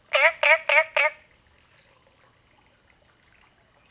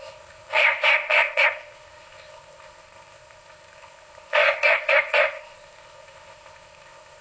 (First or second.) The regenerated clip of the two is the second